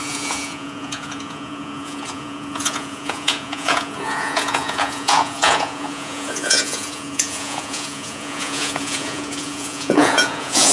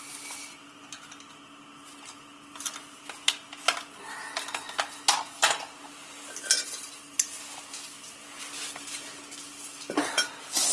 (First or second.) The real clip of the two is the second